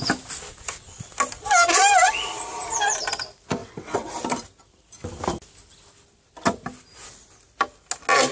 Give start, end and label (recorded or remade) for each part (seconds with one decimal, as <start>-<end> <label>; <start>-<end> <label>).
0.0-3.6 recorded; 3.6-4.1 remade; 4.1-8.3 recorded